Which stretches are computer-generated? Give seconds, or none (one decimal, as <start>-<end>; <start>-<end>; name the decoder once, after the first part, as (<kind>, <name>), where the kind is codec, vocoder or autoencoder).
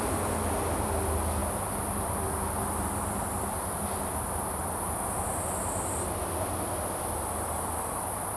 none